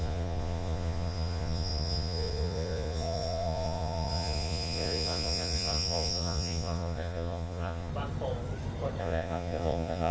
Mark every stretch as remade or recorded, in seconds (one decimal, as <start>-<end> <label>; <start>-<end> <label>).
0.0-7.9 remade; 7.9-9.0 recorded; 9.0-10.1 remade